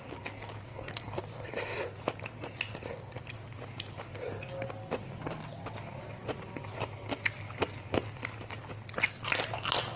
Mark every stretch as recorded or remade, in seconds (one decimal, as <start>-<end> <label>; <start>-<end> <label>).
0.0-0.7 recorded; 0.7-1.2 remade; 1.2-10.0 recorded

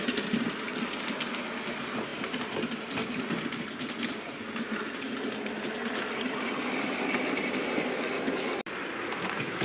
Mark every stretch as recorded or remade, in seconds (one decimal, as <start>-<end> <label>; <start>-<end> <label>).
0.0-9.6 recorded